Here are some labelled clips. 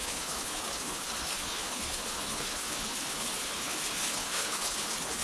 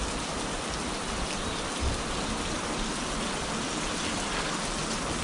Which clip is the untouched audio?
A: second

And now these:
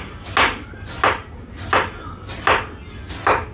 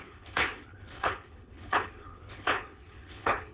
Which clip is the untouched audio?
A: first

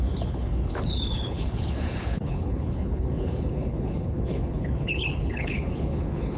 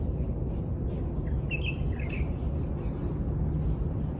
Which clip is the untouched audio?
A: second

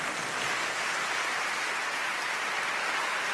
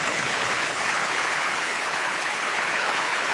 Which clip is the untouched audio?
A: first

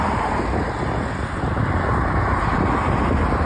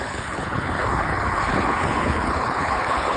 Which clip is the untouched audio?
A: first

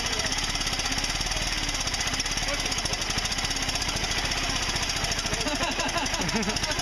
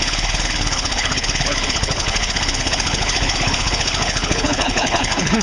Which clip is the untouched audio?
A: first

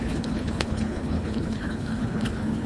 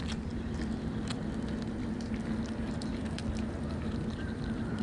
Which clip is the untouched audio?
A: second